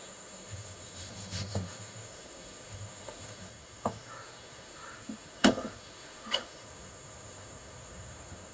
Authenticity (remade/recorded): remade